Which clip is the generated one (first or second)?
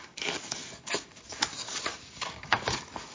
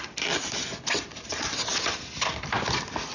first